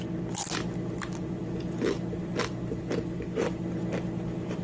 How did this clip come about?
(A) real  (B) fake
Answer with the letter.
A